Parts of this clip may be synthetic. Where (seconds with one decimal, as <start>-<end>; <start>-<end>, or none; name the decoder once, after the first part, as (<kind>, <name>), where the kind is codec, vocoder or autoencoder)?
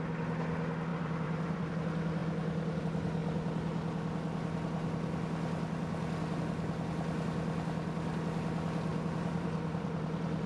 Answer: 0.9-1.7 (vocoder, BigVGAN v2); 8.9-10.5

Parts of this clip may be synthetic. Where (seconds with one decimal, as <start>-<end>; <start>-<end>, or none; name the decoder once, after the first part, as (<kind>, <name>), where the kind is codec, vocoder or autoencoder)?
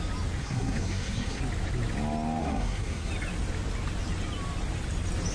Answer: 0.4-1.4 (codec, SNAC); 2.4-3.1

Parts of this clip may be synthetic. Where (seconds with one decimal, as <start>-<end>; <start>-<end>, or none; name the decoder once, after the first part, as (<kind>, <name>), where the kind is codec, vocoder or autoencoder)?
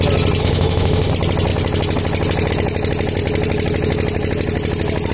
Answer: 0.4-1.1 (autoencoder, DAC-VAE)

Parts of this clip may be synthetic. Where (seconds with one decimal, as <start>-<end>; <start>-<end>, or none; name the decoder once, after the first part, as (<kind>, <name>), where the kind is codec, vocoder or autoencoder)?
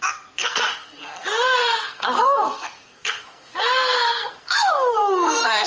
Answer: 0.0-5.7 (codec, SNAC)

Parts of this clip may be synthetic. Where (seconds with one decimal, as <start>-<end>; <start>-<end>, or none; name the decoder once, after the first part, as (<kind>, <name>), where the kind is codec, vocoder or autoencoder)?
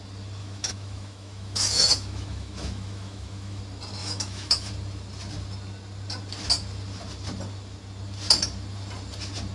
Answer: 0.4-3.6 (autoencoder, DAC-VAE); 4.0-4.7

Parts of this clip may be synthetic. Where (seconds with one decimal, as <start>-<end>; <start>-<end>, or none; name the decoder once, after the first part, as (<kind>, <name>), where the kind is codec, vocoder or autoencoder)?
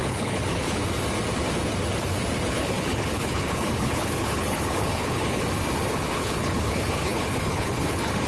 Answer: 0.0-0.8 (codec, HILCodec); 2.5-5.4; 5.9-8.3